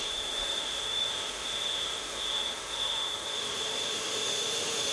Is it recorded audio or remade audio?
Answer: remade